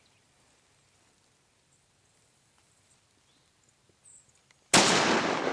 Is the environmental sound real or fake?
real